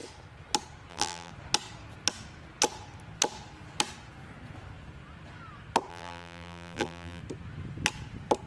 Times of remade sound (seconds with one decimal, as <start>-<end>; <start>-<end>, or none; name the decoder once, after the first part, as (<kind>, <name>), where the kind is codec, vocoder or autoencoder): 0.9-1.3 (vocoder, BigVGAN v2); 5.9-7.2